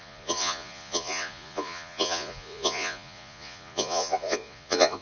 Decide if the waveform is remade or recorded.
remade